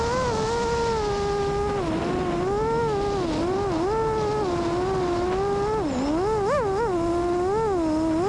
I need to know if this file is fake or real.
real